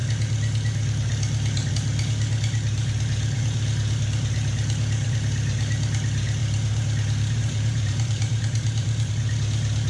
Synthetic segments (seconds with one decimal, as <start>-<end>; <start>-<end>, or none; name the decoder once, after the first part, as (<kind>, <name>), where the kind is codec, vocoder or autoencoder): 6.4-9.1 (vocoder, BigVGAN v2)